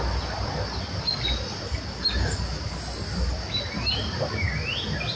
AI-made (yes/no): no